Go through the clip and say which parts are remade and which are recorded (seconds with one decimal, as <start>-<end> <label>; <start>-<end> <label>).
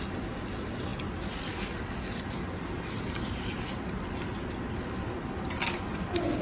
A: 0.0-6.4 recorded